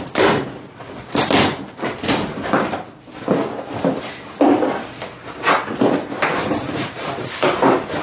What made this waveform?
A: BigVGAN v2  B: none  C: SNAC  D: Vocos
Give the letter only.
B